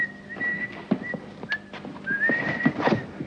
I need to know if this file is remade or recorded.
recorded